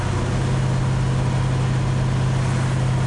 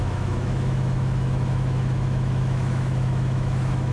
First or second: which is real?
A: first